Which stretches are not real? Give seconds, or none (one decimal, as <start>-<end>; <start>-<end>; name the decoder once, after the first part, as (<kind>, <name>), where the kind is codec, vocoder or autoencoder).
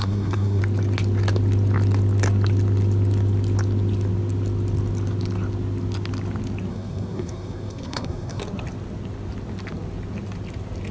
0.0-0.6 (codec, SNAC); 6.7-8.4